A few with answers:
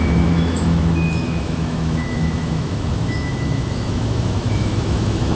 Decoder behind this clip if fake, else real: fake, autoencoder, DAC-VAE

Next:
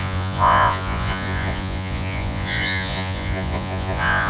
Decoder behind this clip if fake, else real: fake, vocoder, Vocos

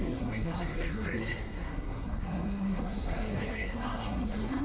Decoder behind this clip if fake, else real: fake, codec, SNAC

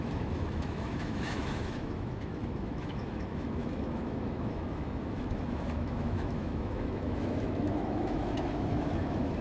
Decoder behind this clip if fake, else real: fake, autoencoder, DAC-VAE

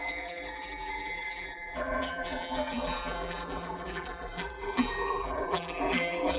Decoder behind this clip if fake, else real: fake, vocoder, BigVGAN v2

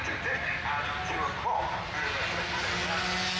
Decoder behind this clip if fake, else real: real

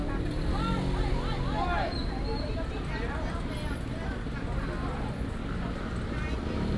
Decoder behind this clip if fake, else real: real